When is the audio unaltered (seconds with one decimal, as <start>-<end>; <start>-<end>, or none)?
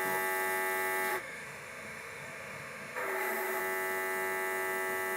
0.0-1.1; 3.6-5.2